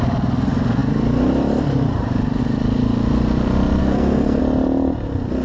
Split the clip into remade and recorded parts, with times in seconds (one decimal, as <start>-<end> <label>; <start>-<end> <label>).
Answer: 0.0-3.8 recorded; 3.8-4.4 remade; 4.4-5.4 recorded